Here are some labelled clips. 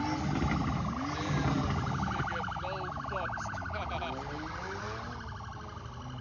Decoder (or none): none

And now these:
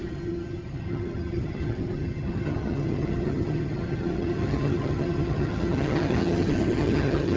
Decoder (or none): vocoder, HiFi-GAN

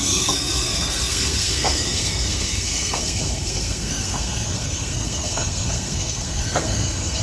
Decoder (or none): codec, SNAC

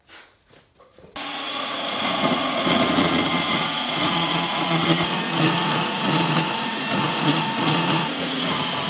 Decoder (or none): vocoder, Vocos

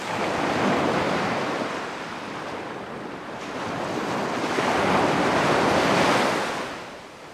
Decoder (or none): none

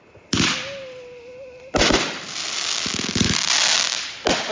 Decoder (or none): none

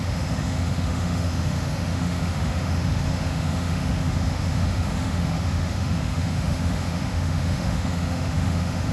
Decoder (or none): autoencoder, DAC-VAE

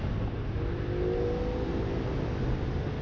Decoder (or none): none